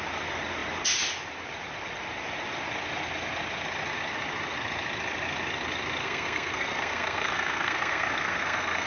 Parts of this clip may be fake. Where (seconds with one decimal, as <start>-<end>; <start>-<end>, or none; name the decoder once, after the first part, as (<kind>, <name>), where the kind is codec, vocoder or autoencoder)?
6.0-8.9 (codec, SNAC)